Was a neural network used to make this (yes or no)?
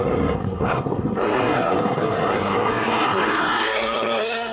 yes